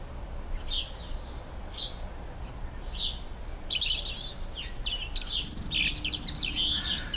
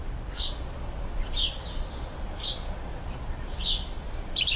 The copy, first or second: second